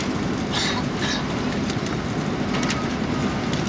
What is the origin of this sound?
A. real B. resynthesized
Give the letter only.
A